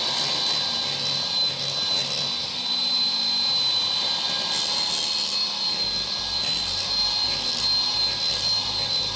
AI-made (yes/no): no